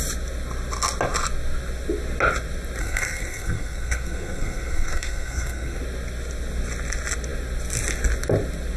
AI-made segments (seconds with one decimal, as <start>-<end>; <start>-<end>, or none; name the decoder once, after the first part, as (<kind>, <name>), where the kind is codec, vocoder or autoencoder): 2.8-5.8 (codec, SNAC)